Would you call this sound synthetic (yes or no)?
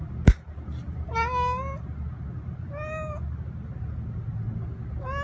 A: no